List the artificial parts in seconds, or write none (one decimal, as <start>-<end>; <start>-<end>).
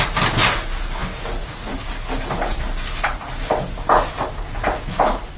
none